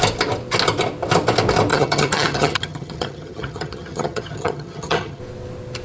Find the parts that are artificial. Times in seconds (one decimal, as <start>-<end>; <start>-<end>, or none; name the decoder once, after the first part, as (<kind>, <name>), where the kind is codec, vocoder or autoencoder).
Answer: 1.7-5.2 (vocoder, HiFi-GAN)